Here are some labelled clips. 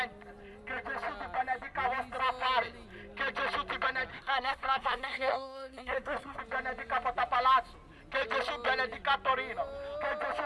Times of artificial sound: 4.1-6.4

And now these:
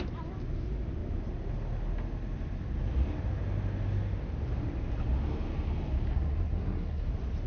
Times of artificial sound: 6.1-7.1

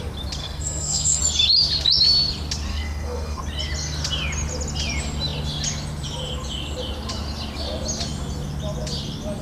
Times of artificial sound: 0.4-1.2; 2.7-3.4

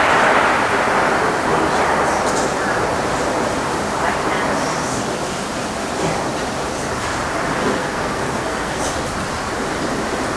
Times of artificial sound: 7.6-8.8

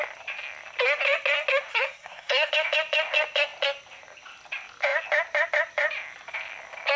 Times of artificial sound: 1.7-2.5

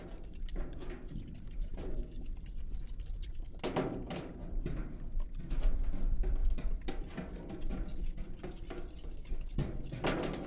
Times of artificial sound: none